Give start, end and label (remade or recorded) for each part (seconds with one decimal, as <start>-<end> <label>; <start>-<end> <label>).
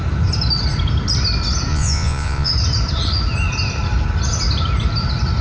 0.0-1.7 recorded; 1.7-2.5 remade; 2.5-5.4 recorded